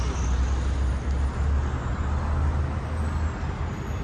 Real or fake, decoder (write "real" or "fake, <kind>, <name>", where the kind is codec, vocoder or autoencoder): real